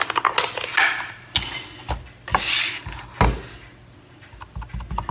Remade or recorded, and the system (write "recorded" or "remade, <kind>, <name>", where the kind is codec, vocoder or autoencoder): recorded